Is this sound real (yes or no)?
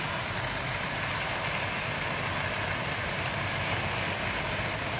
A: yes